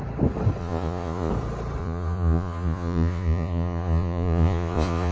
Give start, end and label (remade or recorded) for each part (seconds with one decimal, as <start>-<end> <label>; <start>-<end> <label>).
0.0-0.6 recorded; 0.6-1.3 remade; 1.3-1.8 recorded; 1.8-5.1 remade